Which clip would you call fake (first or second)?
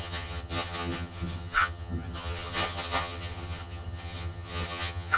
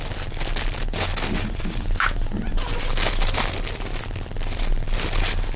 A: first